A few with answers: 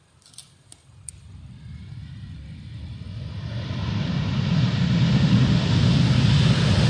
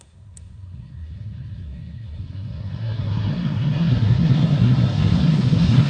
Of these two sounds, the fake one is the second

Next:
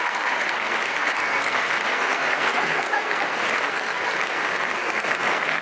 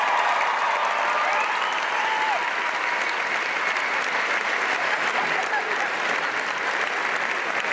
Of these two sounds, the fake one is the first